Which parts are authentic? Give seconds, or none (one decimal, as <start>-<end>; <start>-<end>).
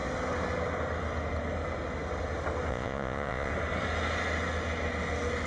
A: 0.0-2.7; 3.5-5.5